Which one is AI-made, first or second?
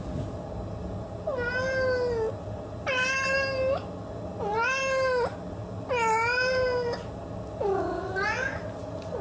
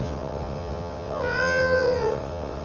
second